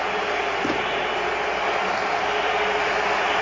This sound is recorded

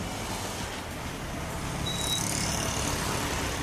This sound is recorded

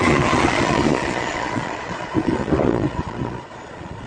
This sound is remade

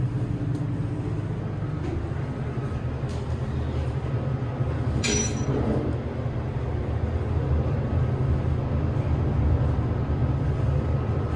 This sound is recorded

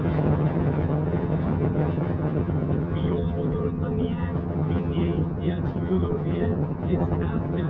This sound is remade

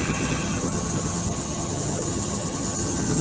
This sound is remade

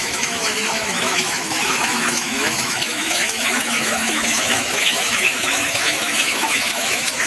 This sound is remade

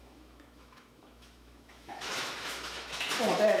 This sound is remade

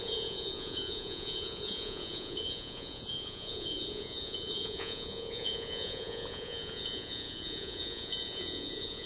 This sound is remade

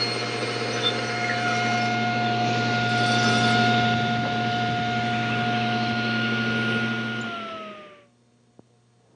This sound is recorded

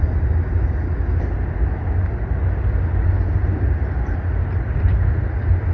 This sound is recorded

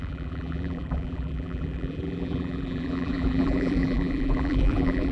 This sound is remade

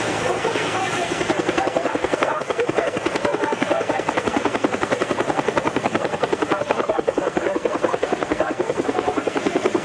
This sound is remade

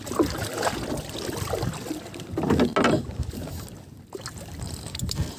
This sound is recorded